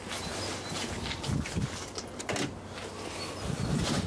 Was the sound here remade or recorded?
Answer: recorded